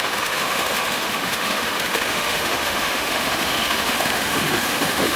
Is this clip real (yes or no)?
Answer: no